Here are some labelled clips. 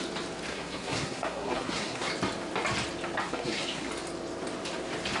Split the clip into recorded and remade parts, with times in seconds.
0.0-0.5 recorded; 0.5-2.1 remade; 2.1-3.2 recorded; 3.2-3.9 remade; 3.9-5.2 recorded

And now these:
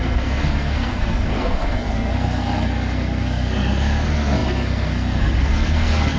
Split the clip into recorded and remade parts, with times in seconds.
0.0-6.2 remade

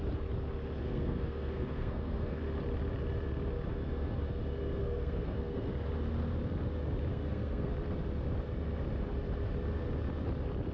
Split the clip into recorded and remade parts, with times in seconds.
0.0-0.8 recorded; 0.8-2.4 remade; 2.4-4.8 recorded; 4.8-5.7 remade; 5.7-7.1 recorded; 7.1-7.7 remade; 7.7-10.7 recorded

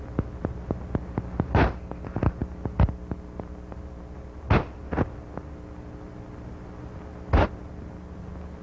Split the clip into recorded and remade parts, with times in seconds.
0.0-8.6 recorded